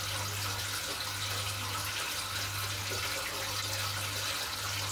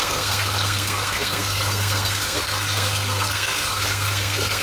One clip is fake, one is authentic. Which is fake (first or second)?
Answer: second